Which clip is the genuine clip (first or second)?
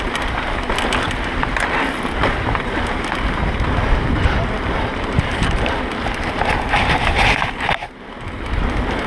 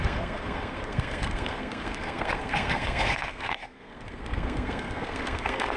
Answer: first